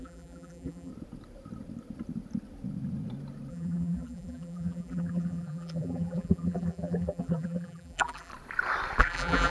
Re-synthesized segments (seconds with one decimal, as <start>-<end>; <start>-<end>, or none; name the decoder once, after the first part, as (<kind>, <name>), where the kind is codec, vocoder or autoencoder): 0.0-0.9 (vocoder, BigVGAN v2); 3.5-8.3; 9.0-9.5